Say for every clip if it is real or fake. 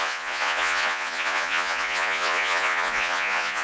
fake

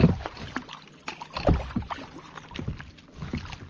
real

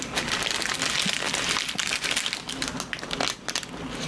real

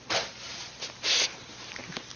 real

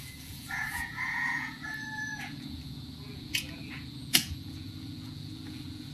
fake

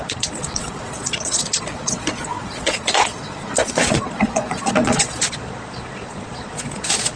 fake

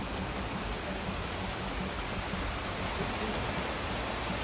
real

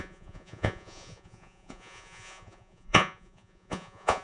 fake